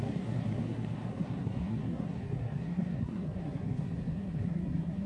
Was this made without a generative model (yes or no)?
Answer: no